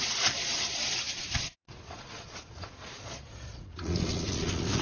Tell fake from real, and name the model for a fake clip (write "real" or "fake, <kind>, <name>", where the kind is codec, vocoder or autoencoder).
fake, vocoder, Vocos